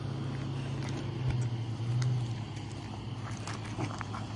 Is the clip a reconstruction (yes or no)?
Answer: no